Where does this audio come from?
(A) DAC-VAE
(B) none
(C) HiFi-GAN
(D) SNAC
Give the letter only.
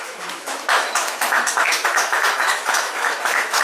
A